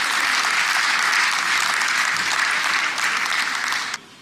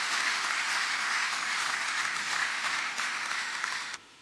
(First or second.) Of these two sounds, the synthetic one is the second